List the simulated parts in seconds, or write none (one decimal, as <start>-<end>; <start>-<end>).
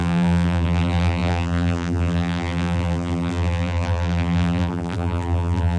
0.0-5.8